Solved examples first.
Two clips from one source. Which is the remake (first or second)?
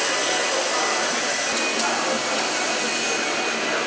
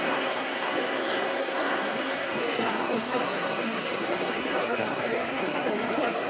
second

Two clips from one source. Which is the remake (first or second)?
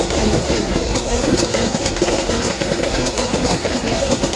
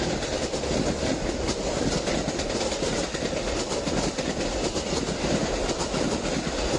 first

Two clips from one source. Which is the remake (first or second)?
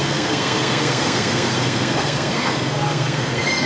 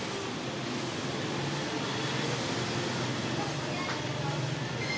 first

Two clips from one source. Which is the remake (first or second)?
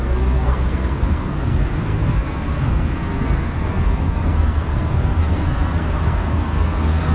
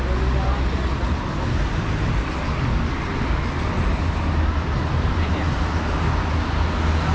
first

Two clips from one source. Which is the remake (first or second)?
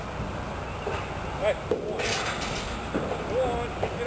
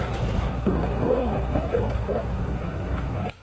second